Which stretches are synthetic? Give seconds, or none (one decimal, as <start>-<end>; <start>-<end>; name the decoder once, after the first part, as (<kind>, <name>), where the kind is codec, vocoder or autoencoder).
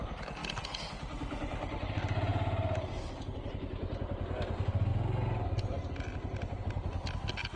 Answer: none